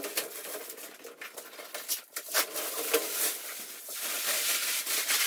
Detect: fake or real real